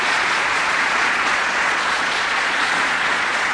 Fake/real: fake